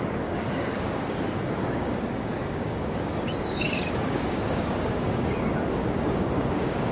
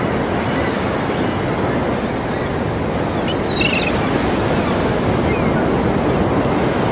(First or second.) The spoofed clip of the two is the first